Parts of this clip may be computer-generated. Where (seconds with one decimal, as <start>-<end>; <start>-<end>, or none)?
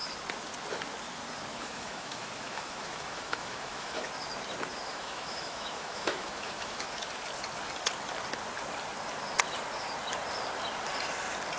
1.5-4.1; 4.9-7.2